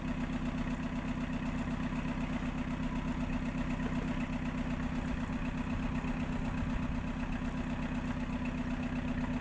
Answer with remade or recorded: recorded